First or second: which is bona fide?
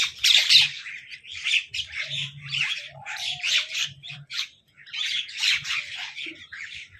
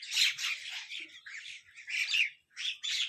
second